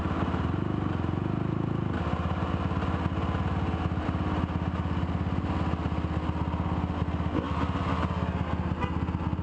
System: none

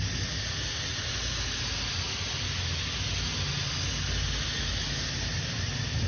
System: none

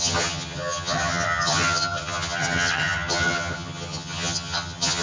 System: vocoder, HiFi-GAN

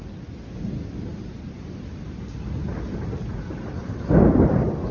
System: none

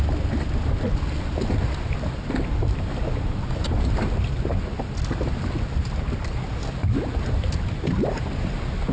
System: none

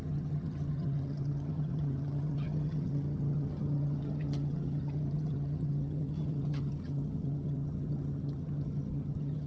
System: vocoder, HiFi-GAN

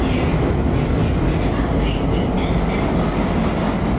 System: none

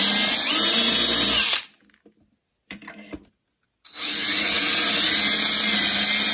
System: none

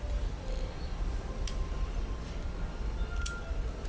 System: none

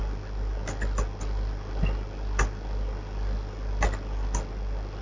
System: none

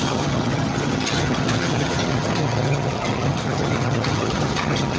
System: vocoder, HiFi-GAN